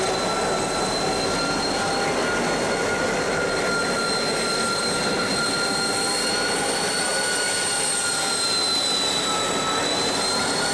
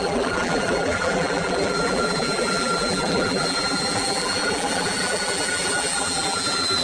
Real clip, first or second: first